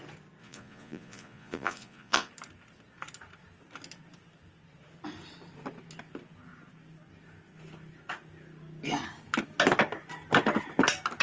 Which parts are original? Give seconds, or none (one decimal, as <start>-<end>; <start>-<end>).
0.0-0.4; 2.3-11.2